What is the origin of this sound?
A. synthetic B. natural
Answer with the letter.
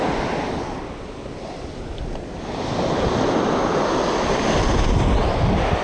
B